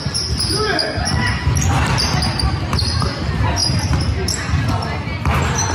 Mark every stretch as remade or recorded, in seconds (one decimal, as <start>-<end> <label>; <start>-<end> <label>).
0.0-5.7 recorded